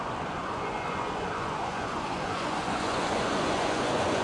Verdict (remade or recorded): remade